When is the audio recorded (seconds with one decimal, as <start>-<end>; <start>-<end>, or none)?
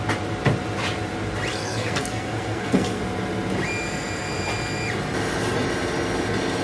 0.0-1.5; 3.0-6.6